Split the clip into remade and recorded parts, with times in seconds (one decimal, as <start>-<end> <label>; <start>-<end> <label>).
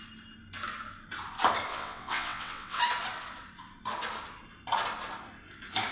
0.0-1.7 recorded; 1.7-2.8 remade; 2.8-5.9 recorded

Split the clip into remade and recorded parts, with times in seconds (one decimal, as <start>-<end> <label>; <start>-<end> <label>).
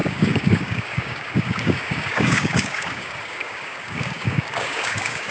0.0-5.3 remade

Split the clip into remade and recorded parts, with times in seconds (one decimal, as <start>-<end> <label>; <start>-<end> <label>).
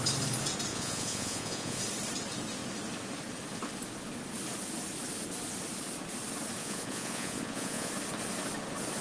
0.0-0.7 recorded; 0.7-1.8 remade; 1.8-6.6 recorded; 6.6-7.9 remade; 7.9-9.0 recorded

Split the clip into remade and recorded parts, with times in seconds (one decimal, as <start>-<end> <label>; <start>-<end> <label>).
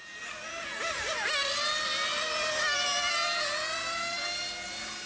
0.0-5.1 recorded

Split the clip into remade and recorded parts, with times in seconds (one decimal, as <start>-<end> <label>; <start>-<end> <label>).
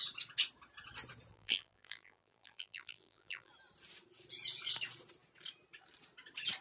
0.0-1.3 recorded; 1.3-3.5 remade; 3.5-6.6 recorded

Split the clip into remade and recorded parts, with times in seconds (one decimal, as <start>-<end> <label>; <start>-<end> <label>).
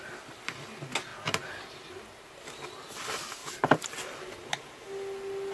0.0-1.1 recorded; 1.1-2.3 remade; 2.3-3.4 recorded; 3.4-4.5 remade; 4.5-5.5 recorded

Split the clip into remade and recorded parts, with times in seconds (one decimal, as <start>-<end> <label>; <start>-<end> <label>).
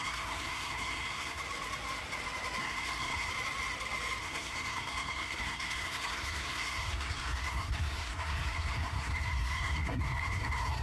0.0-1.4 remade; 1.4-2.6 recorded; 2.6-3.3 remade; 3.3-4.2 recorded; 4.2-10.8 remade